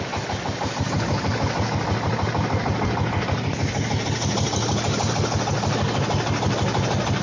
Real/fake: real